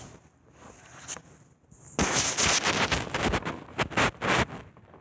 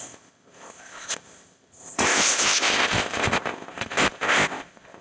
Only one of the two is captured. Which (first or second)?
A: first